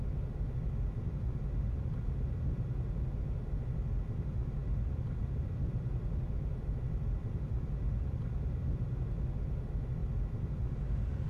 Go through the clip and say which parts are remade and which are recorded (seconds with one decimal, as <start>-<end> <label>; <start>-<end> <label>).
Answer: 0.0-4.6 recorded; 4.6-8.6 remade; 8.6-11.3 recorded